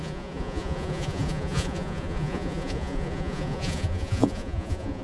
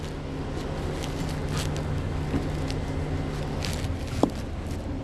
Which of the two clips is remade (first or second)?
first